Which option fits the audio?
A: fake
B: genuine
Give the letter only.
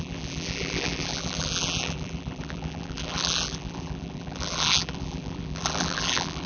A